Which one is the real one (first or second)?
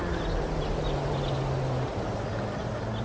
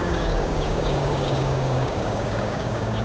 first